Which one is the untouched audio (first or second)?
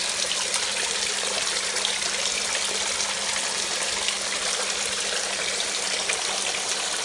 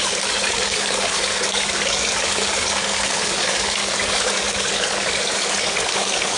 first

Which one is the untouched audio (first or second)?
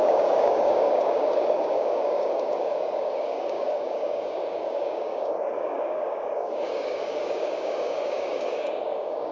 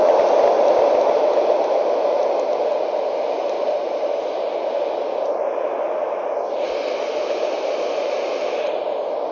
second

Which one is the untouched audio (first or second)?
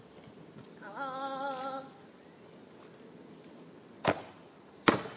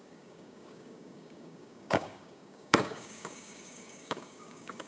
first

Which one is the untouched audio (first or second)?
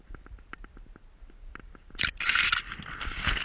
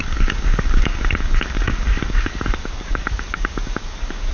first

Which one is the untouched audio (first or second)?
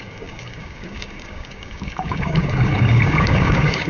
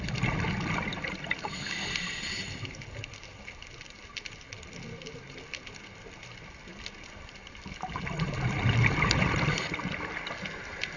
second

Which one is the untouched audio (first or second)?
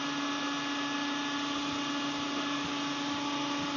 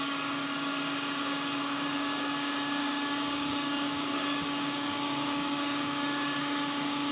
first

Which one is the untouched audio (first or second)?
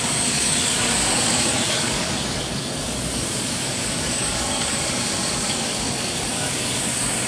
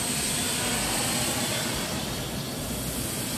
second